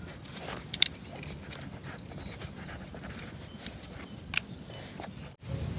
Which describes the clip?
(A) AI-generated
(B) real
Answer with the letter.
B